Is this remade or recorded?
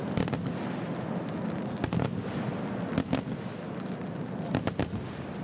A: recorded